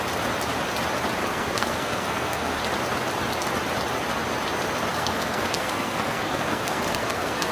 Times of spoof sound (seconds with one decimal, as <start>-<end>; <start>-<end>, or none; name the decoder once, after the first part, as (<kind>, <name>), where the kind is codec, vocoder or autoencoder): 1.2-2.6 (codec, SNAC); 4.9-7.5